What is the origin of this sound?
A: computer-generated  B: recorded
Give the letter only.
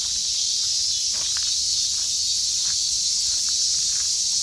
B